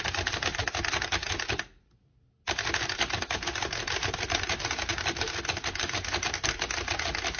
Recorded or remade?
recorded